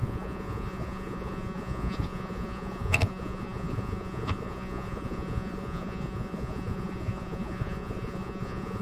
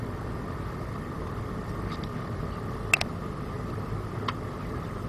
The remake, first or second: first